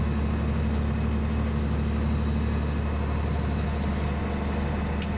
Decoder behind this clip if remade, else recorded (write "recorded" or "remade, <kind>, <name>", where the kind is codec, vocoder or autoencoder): recorded